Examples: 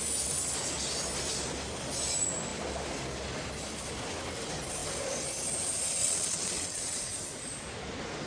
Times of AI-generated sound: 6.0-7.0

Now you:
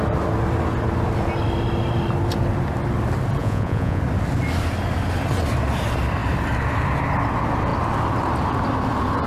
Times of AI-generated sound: 3.4-4.0

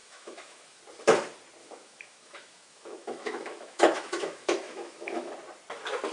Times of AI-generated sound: 0.0-0.8; 1.6-5.3